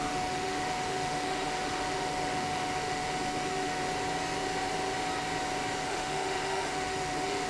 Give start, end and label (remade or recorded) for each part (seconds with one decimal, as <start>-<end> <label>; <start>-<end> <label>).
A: 0.0-3.9 remade; 3.9-5.8 recorded; 5.8-7.5 remade